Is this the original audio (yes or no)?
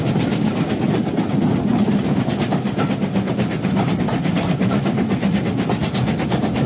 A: yes